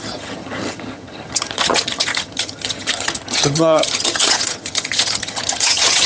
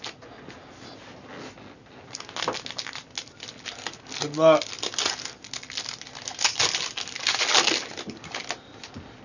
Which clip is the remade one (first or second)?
first